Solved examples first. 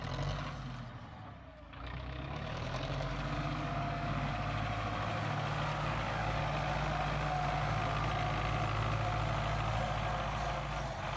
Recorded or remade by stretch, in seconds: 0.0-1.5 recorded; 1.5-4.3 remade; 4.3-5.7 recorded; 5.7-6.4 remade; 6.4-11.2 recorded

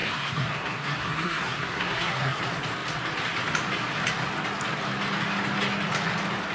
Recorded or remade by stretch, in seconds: 0.0-2.4 remade; 2.4-6.5 recorded